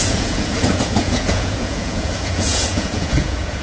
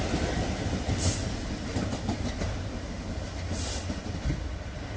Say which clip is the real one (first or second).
second